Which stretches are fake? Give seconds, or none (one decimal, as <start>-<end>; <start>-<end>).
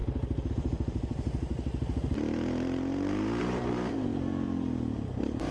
0.5-1.5; 3.4-4.1